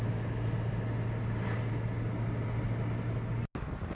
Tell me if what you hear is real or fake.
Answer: real